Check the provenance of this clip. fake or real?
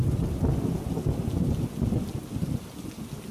real